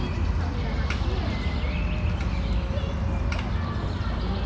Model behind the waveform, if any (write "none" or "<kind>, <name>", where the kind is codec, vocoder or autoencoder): none